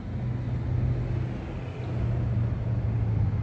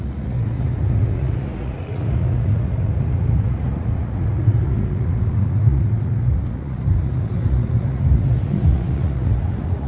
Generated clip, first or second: second